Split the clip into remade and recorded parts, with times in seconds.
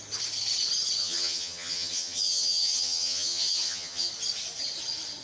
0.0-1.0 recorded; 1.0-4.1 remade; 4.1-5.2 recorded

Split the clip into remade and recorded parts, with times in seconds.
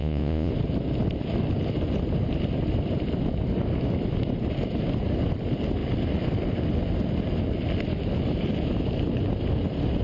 0.0-0.5 remade; 0.5-10.0 recorded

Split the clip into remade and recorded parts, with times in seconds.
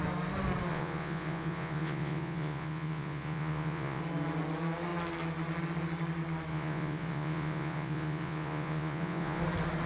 0.0-0.7 recorded; 0.7-4.0 remade; 4.0-6.5 recorded; 6.5-9.4 remade; 9.4-9.9 recorded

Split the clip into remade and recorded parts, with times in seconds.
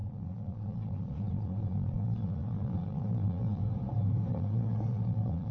0.0-3.6 remade; 3.6-4.3 recorded; 4.3-5.5 remade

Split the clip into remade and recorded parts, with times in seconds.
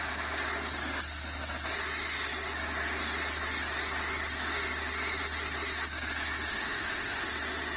0.0-6.5 recorded; 6.5-7.3 remade; 7.3-7.8 recorded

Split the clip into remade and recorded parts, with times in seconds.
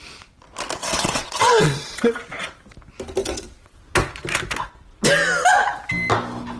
0.0-0.8 recorded; 0.8-2.2 remade; 2.2-3.2 recorded; 3.2-3.8 remade; 3.8-6.6 recorded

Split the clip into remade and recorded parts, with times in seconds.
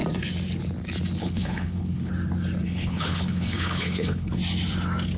0.0-1.2 recorded; 1.2-2.1 remade; 2.1-2.7 recorded; 2.7-4.4 remade; 4.4-5.2 recorded